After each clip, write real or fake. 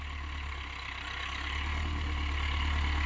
real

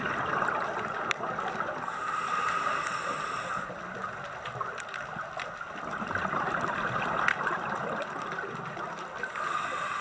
real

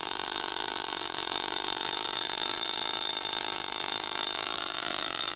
fake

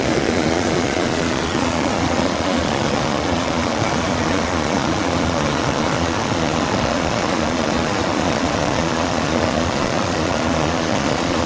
fake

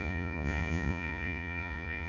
fake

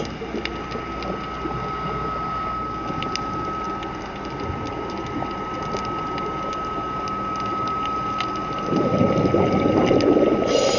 real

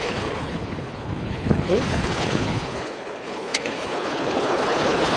fake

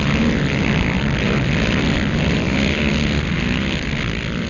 real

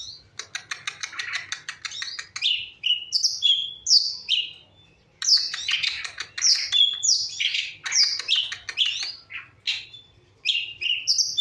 real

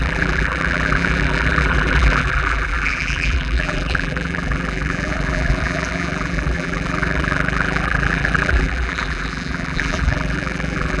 fake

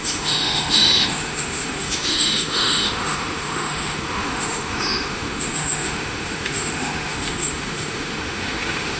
fake